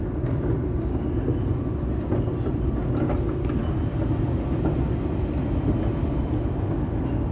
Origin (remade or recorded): recorded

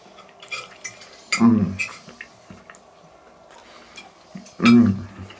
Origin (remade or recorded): recorded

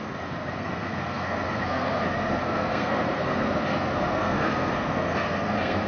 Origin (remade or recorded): remade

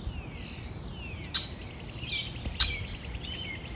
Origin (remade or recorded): recorded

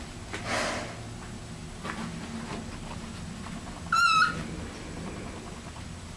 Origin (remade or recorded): recorded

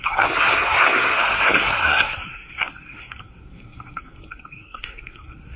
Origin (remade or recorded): remade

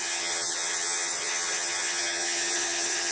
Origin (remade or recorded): remade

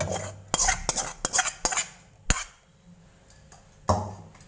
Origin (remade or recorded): recorded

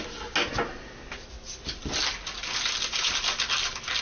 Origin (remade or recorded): recorded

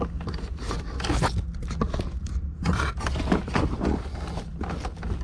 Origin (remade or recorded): recorded